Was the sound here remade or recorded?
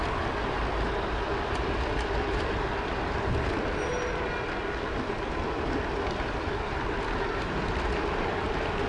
recorded